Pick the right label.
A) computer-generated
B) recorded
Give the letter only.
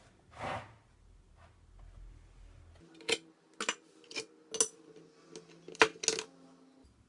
B